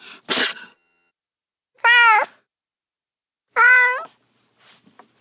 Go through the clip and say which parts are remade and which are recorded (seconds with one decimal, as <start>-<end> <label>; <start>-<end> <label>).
0.0-0.4 recorded; 0.4-1.1 remade; 1.1-5.2 recorded